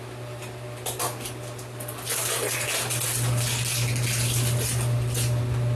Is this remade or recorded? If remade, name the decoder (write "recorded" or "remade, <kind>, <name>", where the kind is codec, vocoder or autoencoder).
recorded